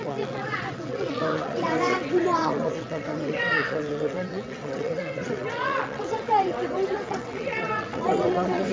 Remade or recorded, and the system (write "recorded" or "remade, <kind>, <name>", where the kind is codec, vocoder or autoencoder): remade, vocoder, WaveNeXt